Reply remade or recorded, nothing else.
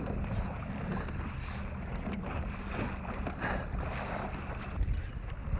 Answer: recorded